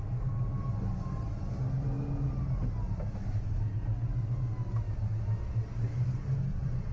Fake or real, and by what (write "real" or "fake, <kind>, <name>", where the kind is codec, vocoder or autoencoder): real